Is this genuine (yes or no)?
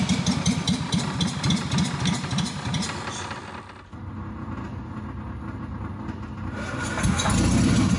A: yes